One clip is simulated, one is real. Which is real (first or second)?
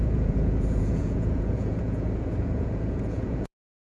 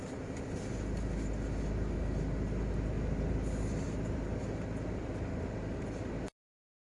second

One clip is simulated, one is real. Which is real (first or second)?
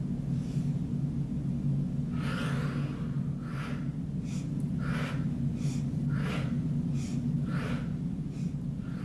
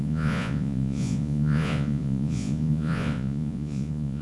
first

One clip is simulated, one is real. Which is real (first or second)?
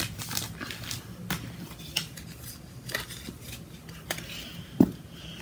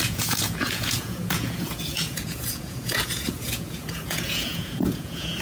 first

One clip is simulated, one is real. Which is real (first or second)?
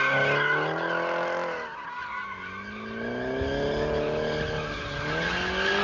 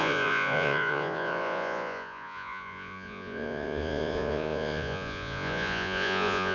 first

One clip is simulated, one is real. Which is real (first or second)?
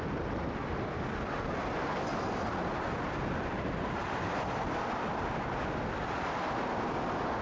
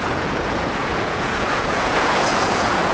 first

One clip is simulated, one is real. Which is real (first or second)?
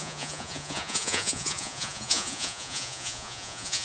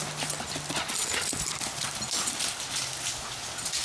second